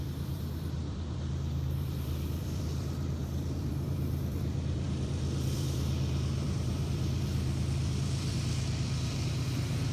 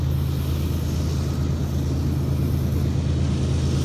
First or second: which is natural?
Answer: second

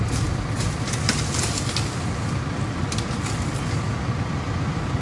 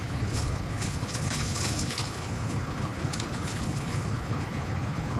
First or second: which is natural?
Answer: first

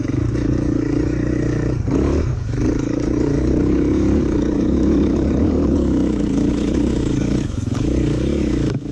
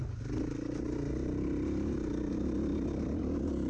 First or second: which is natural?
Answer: second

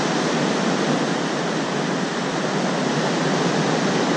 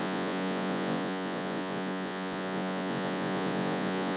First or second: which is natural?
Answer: first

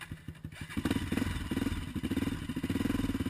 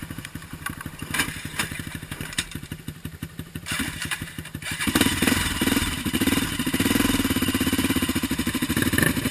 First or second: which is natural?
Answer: first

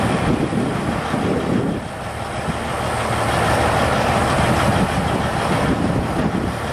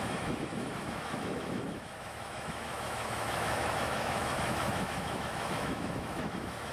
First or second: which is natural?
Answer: first